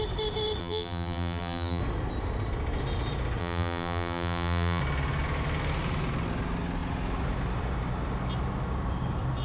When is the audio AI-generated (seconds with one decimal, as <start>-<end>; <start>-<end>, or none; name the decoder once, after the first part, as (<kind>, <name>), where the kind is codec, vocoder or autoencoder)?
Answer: 0.6-1.8 (vocoder, BigVGAN v2); 3.4-4.8